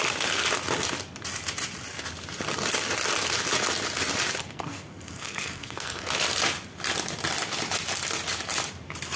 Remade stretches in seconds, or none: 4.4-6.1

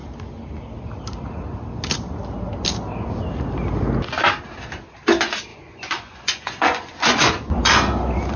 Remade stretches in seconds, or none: 5.5-7.7